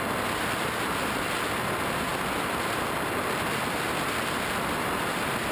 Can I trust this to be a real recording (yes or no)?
no